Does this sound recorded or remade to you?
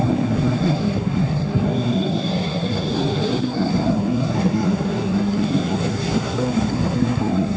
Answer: remade